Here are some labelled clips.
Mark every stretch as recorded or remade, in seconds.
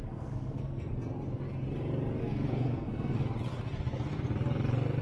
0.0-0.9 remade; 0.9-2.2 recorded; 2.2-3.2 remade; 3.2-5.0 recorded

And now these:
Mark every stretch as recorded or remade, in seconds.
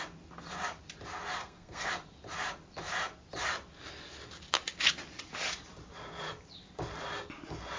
0.0-1.4 recorded; 1.4-1.9 remade; 1.9-7.8 recorded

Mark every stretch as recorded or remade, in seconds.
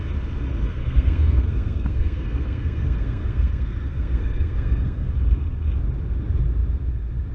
0.0-0.7 recorded; 0.7-5.1 remade; 5.1-7.3 recorded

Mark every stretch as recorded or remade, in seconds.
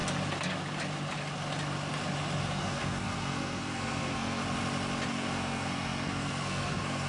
0.0-2.4 recorded; 2.4-4.4 remade; 4.4-5.1 recorded; 5.1-7.1 remade